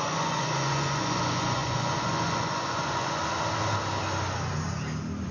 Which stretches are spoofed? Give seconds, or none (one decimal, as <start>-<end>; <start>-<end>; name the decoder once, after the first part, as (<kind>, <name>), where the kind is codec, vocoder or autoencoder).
0.0-3.2 (vocoder, Vocos)